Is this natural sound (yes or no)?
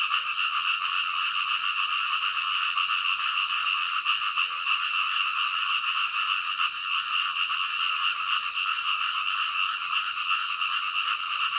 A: yes